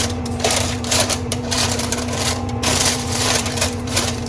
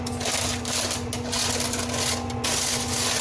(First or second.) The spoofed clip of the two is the first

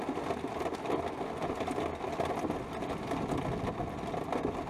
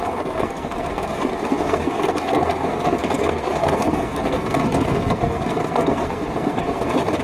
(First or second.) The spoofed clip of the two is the second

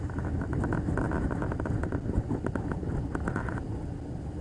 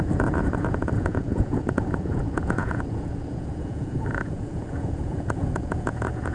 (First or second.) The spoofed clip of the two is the second